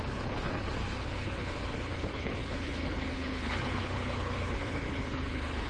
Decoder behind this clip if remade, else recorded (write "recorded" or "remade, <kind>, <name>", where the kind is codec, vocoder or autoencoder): remade, codec, HILCodec